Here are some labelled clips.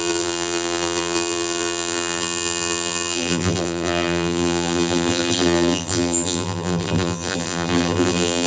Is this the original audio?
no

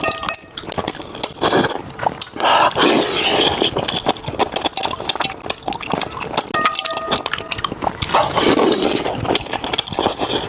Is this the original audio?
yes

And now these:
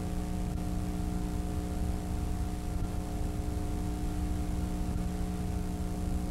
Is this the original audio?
yes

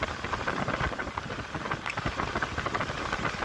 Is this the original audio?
yes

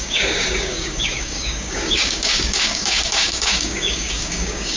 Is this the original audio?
no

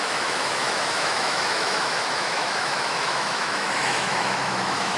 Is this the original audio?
no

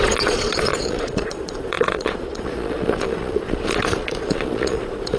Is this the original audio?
no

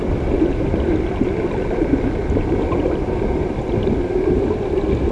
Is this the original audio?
yes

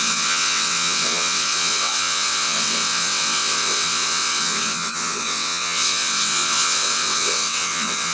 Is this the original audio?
no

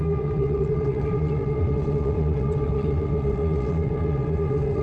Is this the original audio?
no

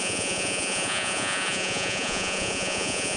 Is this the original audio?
no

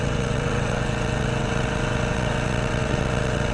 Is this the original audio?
no